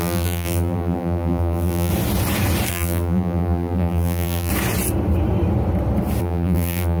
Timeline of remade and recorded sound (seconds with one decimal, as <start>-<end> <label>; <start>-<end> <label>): 0.0-1.9 remade; 1.9-2.7 recorded; 2.7-4.5 remade; 4.5-6.2 recorded; 6.2-7.0 remade